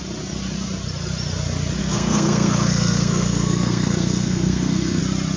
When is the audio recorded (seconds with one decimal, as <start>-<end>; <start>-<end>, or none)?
0.0-1.8; 5.0-5.4